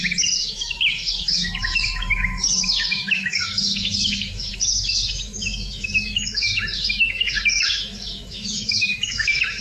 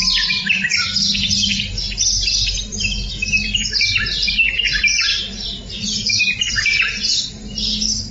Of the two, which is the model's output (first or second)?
first